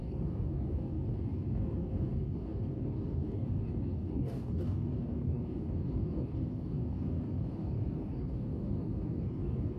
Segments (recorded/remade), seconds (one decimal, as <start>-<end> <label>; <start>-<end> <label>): 0.0-9.8 remade